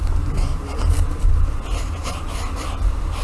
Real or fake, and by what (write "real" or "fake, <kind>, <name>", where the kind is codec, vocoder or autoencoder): real